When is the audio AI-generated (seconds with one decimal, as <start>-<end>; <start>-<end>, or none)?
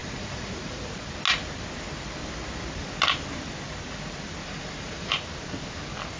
0.0-0.8; 4.4-5.1